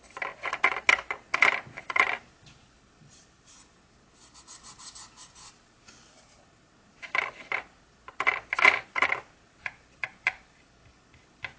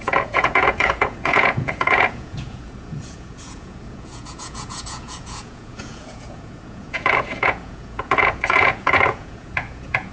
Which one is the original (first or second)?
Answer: first